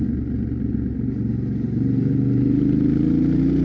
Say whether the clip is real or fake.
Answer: real